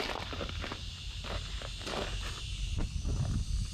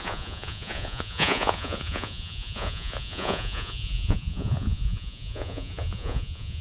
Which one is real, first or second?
first